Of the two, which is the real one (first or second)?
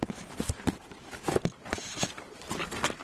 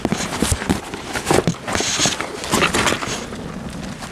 second